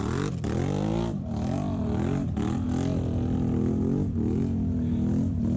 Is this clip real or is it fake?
real